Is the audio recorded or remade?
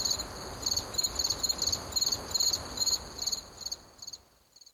recorded